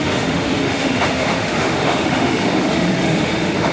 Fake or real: fake